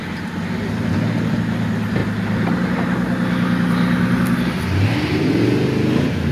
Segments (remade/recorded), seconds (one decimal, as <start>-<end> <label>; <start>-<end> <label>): 0.0-6.3 recorded

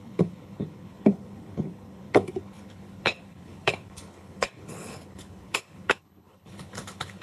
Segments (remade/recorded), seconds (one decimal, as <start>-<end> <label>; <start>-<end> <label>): 0.0-7.2 remade

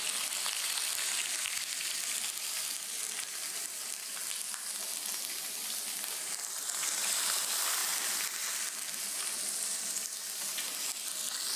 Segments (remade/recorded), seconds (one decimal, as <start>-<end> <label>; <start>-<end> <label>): 0.0-11.6 recorded